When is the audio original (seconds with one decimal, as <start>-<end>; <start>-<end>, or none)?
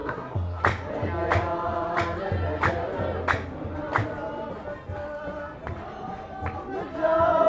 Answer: 0.6-7.5